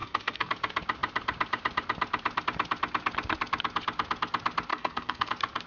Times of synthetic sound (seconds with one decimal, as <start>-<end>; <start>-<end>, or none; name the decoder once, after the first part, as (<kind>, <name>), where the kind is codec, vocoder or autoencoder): 0.0-0.5 (codec, SNAC); 4.7-5.3